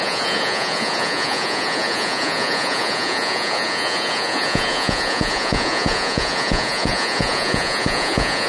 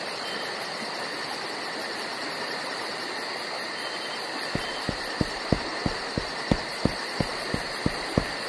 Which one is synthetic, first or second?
first